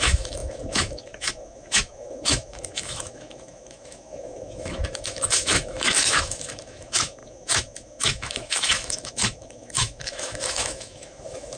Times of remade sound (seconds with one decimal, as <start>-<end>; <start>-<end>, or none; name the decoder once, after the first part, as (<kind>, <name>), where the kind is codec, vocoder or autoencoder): 0.0-11.6 (autoencoder, DAC-VAE)